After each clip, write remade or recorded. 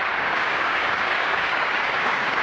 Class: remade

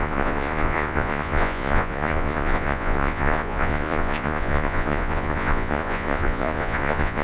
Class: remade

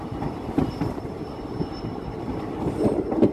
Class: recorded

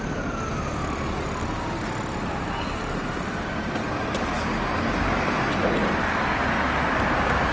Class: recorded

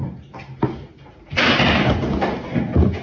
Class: recorded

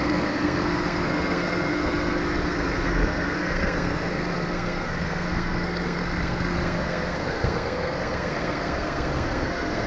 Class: remade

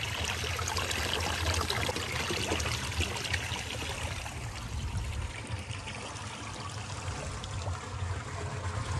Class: recorded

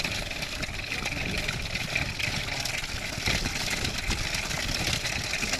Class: recorded